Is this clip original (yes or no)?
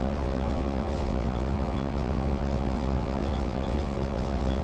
no